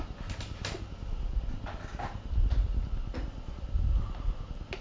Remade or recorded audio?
recorded